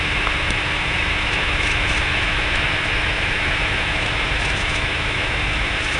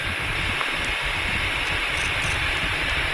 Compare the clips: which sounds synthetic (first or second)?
first